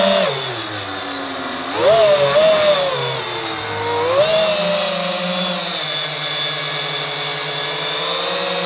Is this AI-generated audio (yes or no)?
no